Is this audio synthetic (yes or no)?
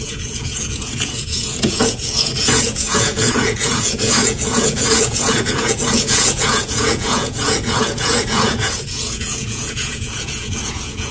yes